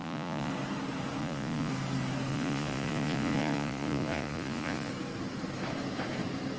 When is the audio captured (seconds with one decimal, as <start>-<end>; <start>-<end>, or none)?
0.5-1.2; 1.7-2.3; 4.9-6.6